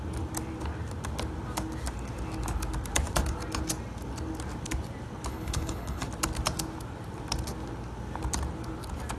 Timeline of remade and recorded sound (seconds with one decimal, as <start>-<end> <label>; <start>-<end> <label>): 0.0-5.3 recorded; 5.3-6.0 remade; 6.0-9.2 recorded